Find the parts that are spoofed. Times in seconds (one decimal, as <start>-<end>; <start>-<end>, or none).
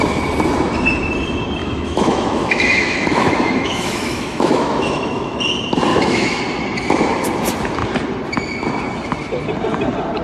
1.6-5.4; 5.9-6.4